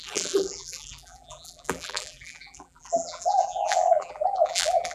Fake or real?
fake